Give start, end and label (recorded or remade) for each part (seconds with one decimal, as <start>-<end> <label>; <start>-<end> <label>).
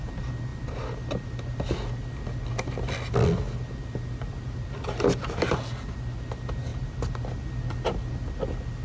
0.0-8.8 recorded